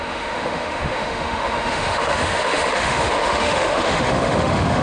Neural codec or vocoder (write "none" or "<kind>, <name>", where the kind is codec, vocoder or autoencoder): autoencoder, DAC-VAE